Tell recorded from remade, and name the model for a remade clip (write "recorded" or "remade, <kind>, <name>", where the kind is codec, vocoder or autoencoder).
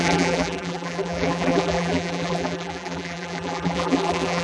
remade, vocoder, BigVGAN v2